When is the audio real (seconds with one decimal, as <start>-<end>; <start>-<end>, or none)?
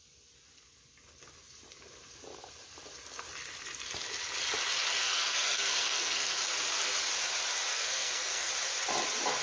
0.0-5.0; 6.4-7.7; 8.5-9.4